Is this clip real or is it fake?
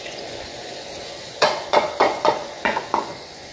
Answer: fake